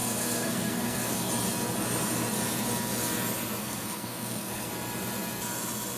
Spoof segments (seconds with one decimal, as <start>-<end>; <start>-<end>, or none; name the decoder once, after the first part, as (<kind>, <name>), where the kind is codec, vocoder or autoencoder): 0.0-1.3 (codec, SNAC); 3.6-4.7